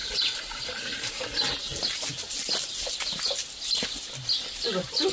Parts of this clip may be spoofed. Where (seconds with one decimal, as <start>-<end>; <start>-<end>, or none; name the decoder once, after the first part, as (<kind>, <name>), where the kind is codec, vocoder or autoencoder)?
0.0-1.1 (vocoder, BigVGAN v2)